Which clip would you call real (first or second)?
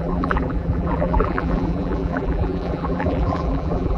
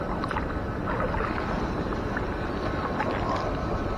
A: second